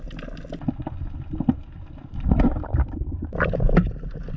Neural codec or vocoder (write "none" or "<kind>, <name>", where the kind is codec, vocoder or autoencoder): none